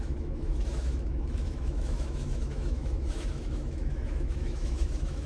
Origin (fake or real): fake